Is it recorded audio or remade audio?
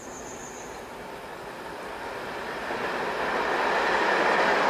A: recorded